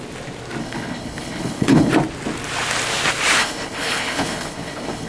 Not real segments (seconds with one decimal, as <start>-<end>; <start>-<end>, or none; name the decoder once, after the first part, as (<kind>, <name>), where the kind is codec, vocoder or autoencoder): 0.6-1.9 (codec, HILCodec); 3.4-5.1